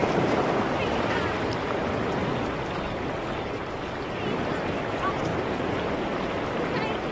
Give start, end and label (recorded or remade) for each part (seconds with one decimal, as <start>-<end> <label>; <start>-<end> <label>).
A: 0.0-0.7 remade; 0.7-5.3 recorded; 5.3-6.3 remade; 6.3-7.1 recorded